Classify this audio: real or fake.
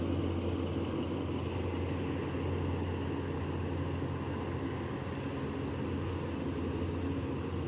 real